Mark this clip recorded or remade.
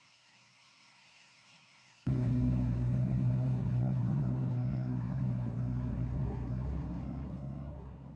remade